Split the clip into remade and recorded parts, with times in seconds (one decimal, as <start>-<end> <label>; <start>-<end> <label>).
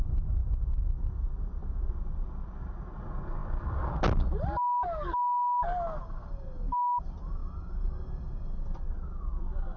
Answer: 0.0-9.8 recorded